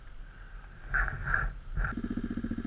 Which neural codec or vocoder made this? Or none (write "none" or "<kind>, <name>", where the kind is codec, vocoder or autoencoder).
none